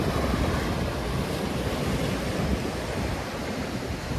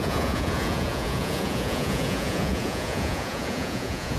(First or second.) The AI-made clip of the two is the second